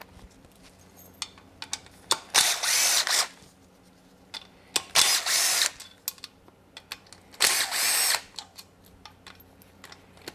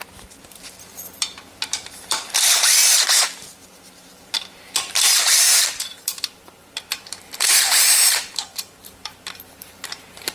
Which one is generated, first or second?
second